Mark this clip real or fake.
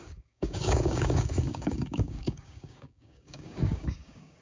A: fake